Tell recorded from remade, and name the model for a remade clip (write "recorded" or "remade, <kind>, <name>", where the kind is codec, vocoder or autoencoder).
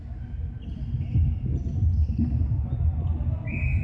recorded